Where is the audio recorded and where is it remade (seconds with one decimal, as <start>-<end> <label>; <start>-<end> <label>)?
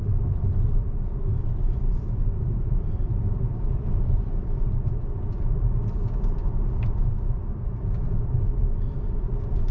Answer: 0.0-0.7 recorded; 0.7-5.8 remade; 5.8-9.7 recorded